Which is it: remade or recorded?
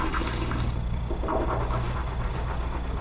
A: recorded